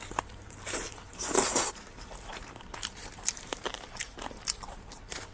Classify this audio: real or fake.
fake